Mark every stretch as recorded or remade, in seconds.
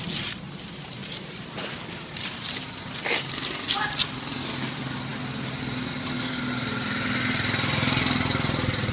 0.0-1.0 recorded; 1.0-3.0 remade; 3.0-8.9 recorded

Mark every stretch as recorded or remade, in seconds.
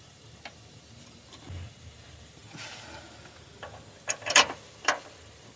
0.0-2.4 remade; 2.4-4.3 recorded; 4.3-5.6 remade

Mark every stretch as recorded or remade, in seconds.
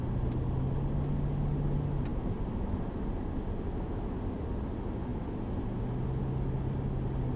0.0-7.4 recorded